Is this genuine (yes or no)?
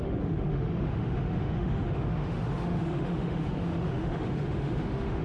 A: no